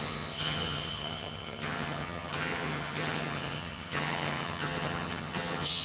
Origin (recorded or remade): remade